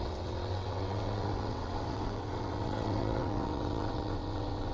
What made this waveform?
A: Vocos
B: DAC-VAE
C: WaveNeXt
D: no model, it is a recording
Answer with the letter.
C